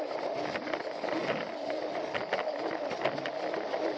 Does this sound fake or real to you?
real